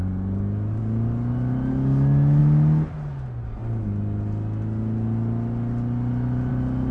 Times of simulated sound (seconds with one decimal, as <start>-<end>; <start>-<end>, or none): none